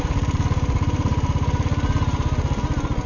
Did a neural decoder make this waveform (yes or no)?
no